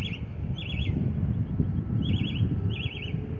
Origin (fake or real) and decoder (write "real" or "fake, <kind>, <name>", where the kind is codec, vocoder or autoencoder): real